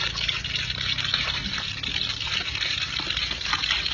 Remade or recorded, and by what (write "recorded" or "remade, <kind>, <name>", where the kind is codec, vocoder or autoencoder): recorded